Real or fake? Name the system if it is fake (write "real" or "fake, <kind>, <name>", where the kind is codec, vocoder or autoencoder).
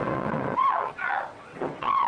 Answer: fake, vocoder, WaveNeXt